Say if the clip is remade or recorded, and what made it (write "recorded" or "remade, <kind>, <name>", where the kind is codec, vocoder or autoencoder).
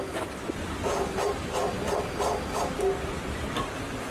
recorded